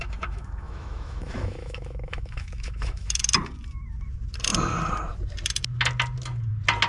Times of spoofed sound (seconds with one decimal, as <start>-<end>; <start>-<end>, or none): 0.0-3.2